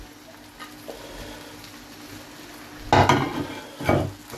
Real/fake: real